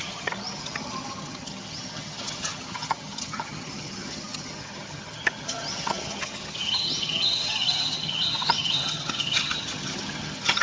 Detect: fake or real fake